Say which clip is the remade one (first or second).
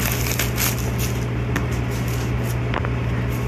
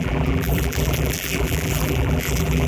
second